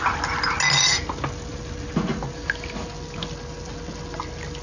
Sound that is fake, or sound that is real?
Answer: real